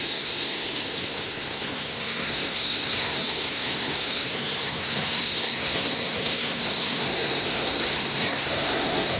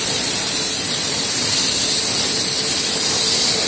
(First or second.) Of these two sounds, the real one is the second